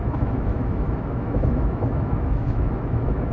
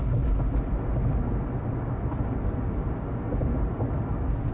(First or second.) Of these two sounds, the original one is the second